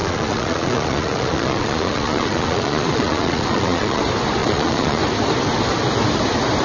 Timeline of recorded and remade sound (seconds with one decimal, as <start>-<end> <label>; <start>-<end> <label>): 0.0-4.0 remade; 4.0-4.4 recorded; 4.4-5.0 remade; 5.0-6.6 recorded